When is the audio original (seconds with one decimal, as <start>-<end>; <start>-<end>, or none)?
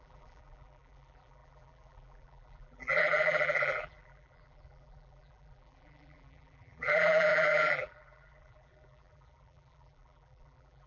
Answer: none